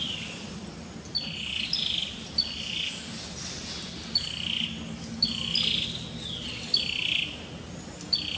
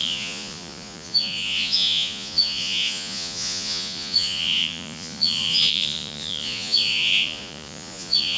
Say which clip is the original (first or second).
first